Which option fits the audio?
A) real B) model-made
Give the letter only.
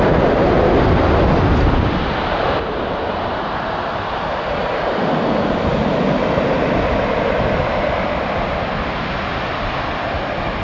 A